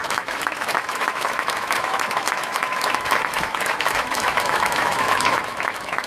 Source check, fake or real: fake